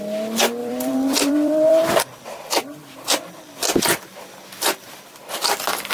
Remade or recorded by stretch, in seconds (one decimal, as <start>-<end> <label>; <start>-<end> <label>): 0.0-0.6 recorded; 0.6-2.0 remade; 2.0-2.8 recorded; 2.8-3.5 remade; 3.5-5.9 recorded